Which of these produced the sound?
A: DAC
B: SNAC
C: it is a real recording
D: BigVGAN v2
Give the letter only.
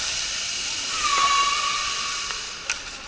C